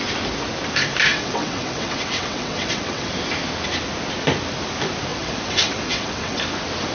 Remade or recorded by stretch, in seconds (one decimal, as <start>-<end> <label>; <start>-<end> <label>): 0.0-1.1 recorded; 1.1-3.1 remade; 3.1-5.1 recorded; 5.1-6.4 remade; 6.4-6.9 recorded